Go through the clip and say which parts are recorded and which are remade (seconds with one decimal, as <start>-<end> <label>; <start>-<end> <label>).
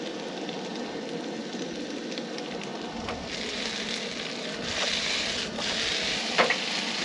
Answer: 0.0-7.0 recorded